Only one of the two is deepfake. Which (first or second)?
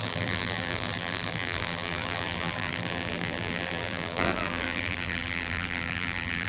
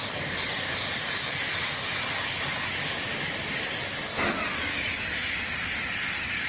first